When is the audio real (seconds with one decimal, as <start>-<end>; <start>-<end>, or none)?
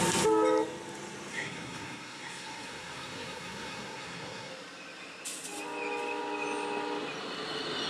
0.0-1.3; 4.5-7.9